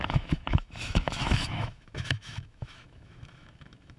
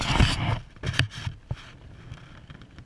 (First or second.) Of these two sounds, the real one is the second